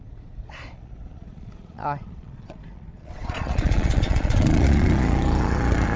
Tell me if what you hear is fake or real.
fake